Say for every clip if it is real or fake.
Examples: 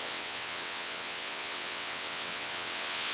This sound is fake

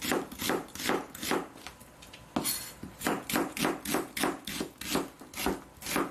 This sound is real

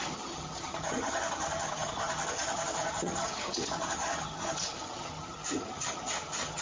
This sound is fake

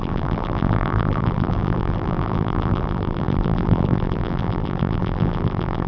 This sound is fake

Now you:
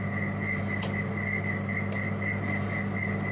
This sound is real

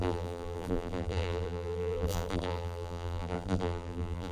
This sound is fake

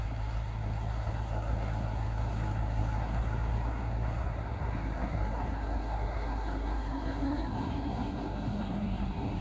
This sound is fake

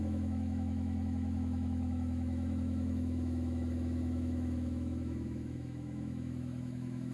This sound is fake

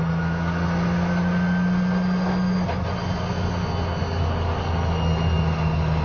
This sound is real